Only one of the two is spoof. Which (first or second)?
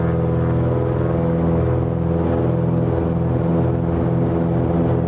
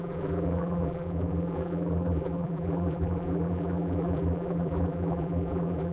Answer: second